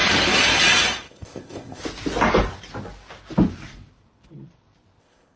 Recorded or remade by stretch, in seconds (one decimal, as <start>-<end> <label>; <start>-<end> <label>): 0.0-1.0 recorded; 1.0-1.8 remade; 1.8-5.0 recorded; 5.0-5.4 remade